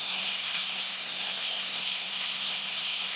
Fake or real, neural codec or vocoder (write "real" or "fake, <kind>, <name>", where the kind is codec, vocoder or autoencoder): fake, codec, SNAC